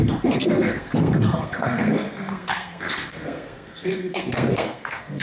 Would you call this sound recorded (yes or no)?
no